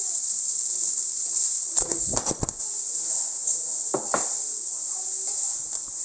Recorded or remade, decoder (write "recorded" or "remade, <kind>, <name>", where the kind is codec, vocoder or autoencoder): remade, vocoder, BigVGAN v2